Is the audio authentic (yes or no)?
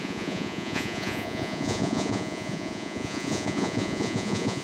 no